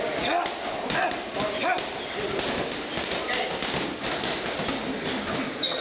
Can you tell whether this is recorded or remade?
recorded